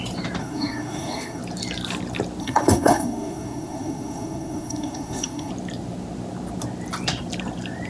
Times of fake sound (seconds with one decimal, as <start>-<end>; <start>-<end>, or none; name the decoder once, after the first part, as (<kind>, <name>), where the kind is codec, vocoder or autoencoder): 0.4-1.4 (codec, SNAC); 2.4-5.5